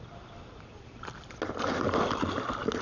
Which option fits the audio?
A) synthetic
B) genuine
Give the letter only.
B